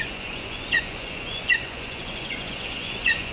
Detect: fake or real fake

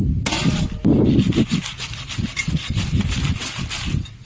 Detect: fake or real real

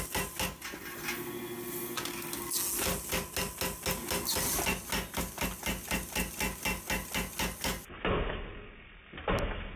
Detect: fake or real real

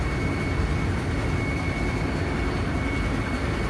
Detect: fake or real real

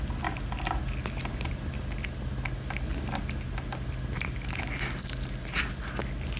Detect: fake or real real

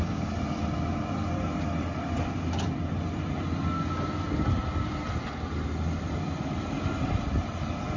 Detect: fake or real fake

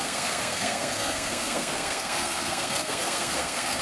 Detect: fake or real fake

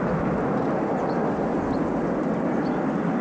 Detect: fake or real real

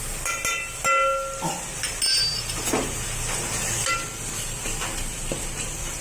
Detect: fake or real real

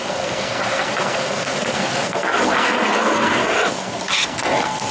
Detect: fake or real fake